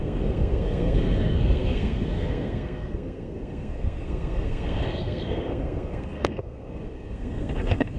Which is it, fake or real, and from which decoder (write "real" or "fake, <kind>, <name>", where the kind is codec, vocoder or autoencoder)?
fake, codec, SNAC